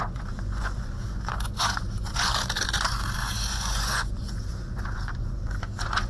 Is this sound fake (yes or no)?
yes